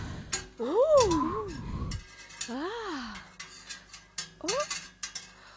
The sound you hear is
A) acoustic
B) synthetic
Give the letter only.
A